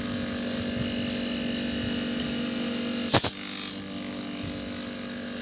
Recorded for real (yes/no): yes